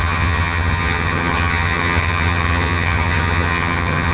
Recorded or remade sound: remade